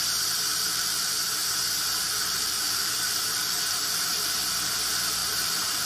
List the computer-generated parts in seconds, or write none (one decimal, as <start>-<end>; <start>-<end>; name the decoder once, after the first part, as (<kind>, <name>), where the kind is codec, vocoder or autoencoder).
0.5-1.1 (vocoder, BigVGAN v2); 2.0-4.3; 5.2-5.9